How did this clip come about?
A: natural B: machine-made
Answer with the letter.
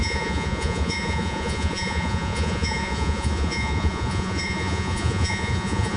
B